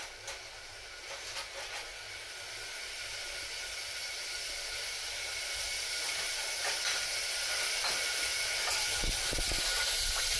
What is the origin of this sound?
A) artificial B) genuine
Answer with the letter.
B